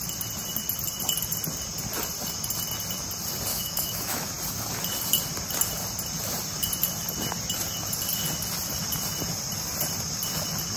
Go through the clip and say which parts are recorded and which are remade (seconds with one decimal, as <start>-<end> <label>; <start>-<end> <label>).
0.0-3.5 recorded; 3.5-4.3 remade; 4.3-10.8 recorded

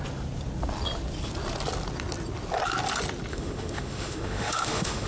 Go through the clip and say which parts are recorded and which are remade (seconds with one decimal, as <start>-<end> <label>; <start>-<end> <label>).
0.0-3.3 recorded; 3.3-5.1 remade

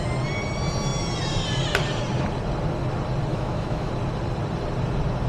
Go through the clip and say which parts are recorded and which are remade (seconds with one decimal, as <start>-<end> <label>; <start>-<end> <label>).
0.0-3.3 recorded; 3.3-3.9 remade; 3.9-5.3 recorded

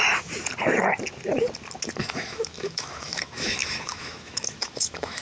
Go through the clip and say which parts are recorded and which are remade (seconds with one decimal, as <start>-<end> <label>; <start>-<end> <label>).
0.0-2.0 recorded; 2.0-5.2 remade